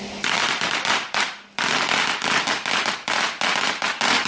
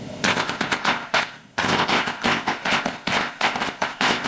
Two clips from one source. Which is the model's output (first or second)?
second